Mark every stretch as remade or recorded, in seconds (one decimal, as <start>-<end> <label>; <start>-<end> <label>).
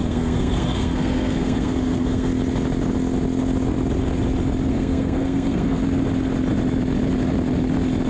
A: 0.0-2.3 remade; 2.3-4.7 recorded; 4.7-5.8 remade; 5.8-8.1 recorded